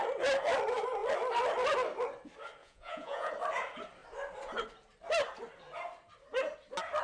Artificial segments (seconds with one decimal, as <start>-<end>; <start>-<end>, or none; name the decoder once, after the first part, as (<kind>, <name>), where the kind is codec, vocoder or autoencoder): 2.6-3.3 (vocoder, Vocos)